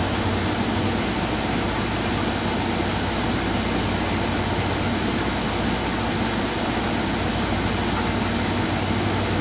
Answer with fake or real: real